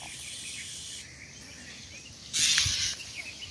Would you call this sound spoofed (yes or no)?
no